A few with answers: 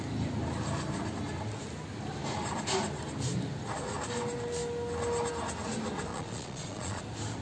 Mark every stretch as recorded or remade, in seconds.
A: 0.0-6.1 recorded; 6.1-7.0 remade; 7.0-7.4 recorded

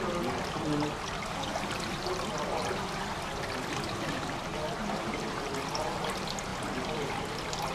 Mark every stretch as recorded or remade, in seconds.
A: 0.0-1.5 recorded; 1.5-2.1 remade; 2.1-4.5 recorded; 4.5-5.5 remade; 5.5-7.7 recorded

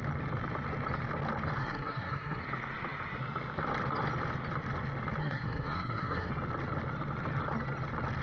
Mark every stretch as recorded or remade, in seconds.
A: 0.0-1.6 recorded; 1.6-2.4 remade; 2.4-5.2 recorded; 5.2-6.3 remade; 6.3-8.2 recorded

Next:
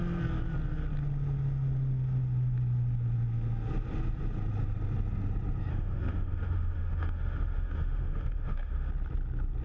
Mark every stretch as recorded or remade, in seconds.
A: 0.0-5.7 recorded; 5.7-8.9 remade; 8.9-9.6 recorded

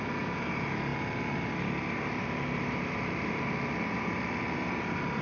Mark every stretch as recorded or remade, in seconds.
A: 0.0-5.2 recorded

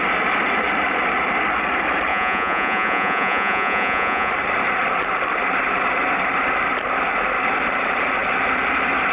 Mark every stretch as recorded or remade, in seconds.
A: 0.0-2.1 recorded; 2.1-4.3 remade; 4.3-9.1 recorded

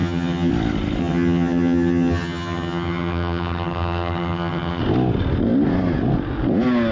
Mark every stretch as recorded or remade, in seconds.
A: 0.0-0.5 remade; 0.5-1.0 recorded; 1.0-4.8 remade; 4.8-6.9 recorded